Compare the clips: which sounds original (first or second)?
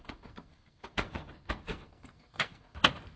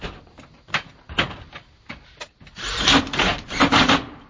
second